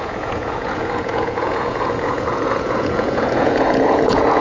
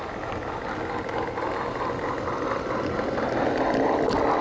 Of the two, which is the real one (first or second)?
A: second